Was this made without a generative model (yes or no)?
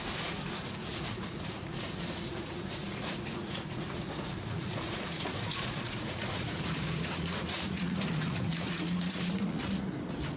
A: no